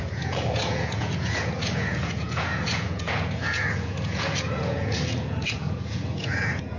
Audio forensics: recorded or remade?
remade